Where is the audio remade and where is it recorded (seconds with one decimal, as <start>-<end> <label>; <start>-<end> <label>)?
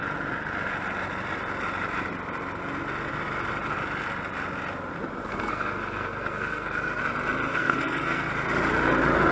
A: 0.0-5.2 recorded; 5.2-7.0 remade; 7.0-7.5 recorded; 7.5-8.3 remade; 8.3-9.3 recorded